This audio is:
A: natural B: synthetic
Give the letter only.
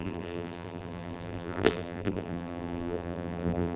B